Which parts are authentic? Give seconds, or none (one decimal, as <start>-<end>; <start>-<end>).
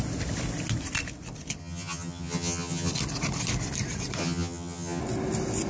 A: 0.0-1.6; 2.9-4.2; 5.0-5.7